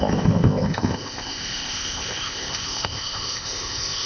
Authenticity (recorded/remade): remade